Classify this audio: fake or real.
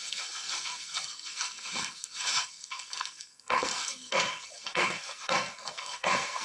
fake